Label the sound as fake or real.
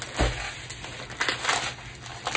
real